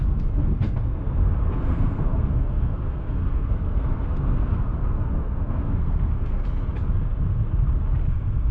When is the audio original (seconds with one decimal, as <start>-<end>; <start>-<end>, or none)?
6.4-8.1